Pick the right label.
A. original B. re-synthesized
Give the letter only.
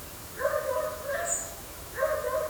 B